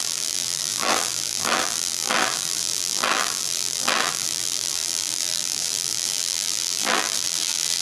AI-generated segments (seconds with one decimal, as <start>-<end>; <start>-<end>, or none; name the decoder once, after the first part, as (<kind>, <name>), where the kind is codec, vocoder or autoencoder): 0.0-7.8 (vocoder, BigVGAN v2)